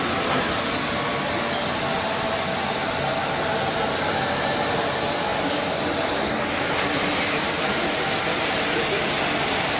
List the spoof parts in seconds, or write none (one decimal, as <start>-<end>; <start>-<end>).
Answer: none